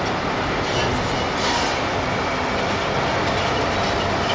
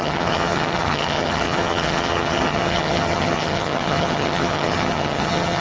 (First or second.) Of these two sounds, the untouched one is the first